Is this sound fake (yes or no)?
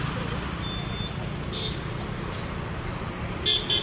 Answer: no